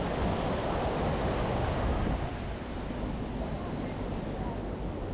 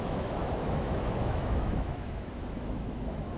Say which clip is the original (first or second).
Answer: first